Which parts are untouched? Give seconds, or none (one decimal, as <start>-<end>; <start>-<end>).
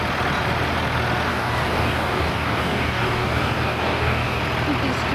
0.0-1.3; 4.4-5.1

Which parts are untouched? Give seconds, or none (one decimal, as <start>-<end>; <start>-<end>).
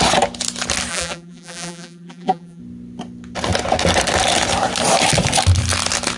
0.0-0.9; 2.6-6.2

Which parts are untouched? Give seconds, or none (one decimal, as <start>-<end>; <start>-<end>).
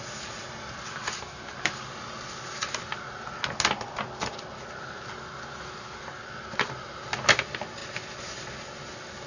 0.0-9.3